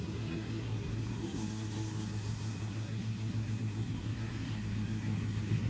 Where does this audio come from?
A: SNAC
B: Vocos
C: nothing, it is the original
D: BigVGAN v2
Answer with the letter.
A